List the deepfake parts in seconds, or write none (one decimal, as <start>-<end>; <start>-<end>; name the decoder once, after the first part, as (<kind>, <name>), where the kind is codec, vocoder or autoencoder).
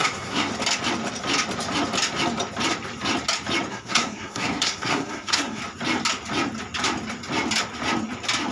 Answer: 0.0-0.5 (codec, SNAC); 3.7-5.6